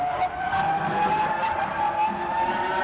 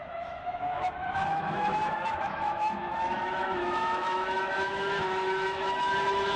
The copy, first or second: second